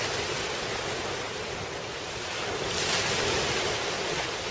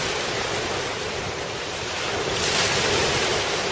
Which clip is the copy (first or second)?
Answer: second